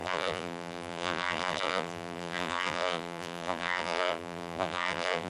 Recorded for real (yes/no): no